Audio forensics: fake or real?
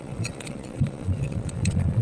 fake